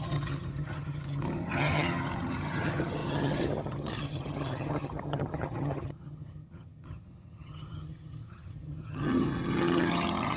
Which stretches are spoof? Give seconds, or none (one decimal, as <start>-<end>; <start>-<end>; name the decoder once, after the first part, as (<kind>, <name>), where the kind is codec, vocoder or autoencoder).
0.0-10.4 (vocoder, HiFi-GAN)